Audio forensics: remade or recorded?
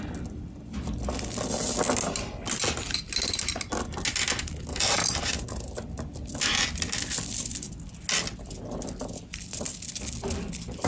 recorded